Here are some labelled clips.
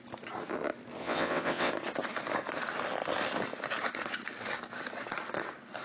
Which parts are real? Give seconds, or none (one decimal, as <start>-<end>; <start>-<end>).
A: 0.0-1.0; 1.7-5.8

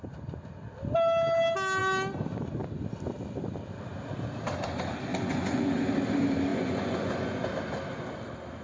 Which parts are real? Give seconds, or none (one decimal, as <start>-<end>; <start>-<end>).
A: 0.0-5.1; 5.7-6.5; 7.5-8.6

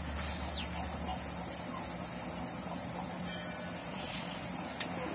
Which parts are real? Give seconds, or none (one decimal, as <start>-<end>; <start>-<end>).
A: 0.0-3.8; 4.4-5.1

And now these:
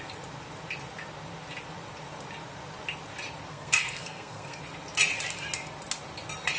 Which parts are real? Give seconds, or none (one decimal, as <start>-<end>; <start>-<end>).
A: 0.0-3.5; 4.6-6.6

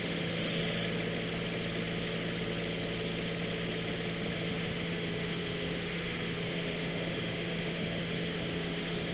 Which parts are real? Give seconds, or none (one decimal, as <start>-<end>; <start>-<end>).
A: 0.6-4.3

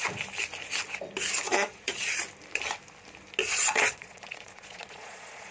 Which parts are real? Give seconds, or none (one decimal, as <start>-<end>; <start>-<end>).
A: 0.0-1.5; 2.2-3.5

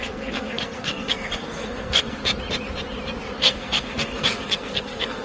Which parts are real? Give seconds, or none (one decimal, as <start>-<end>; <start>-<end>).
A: 2.2-3.4